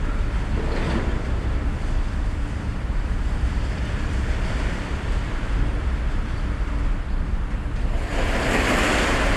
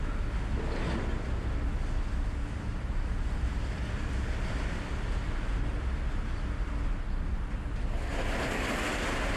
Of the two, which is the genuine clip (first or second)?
second